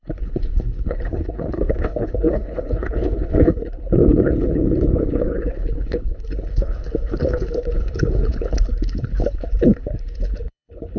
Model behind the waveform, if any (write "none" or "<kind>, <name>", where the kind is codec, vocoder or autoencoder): codec, HILCodec